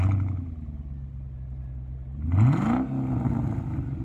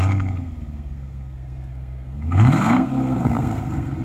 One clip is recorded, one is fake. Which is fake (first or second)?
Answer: second